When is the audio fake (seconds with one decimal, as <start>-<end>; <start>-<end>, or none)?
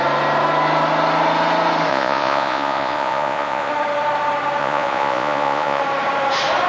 1.9-3.7; 4.6-5.8